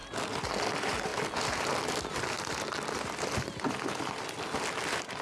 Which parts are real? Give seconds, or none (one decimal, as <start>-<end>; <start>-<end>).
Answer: 0.0-5.2